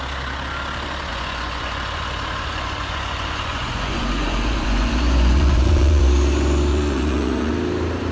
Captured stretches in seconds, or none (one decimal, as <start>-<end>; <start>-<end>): 0.0-1.1; 6.0-6.7; 7.5-8.1